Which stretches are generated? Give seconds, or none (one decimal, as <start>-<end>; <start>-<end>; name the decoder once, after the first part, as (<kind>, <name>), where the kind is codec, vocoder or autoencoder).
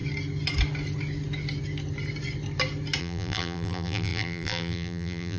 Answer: 3.0-5.4 (vocoder, BigVGAN v2)